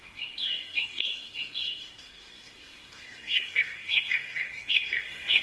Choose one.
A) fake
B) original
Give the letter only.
A